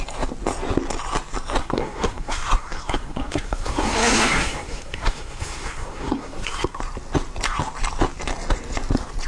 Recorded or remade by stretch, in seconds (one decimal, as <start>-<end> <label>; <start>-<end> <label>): 0.0-1.6 recorded; 1.6-6.8 remade; 6.8-9.3 recorded